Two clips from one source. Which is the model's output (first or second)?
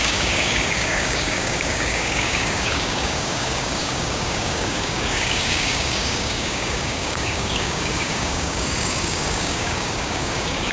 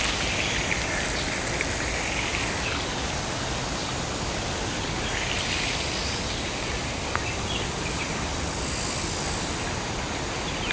first